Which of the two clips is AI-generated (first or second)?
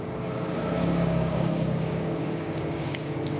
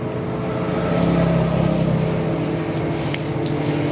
first